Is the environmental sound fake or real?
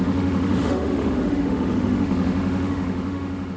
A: fake